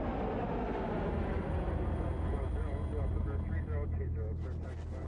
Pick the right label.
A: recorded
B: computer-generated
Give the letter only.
A